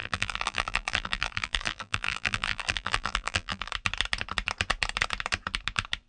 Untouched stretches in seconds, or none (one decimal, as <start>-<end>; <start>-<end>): 3.7-6.1